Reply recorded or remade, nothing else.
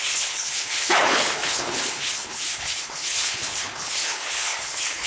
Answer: remade